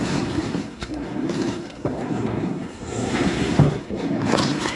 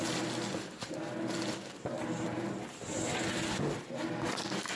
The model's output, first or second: first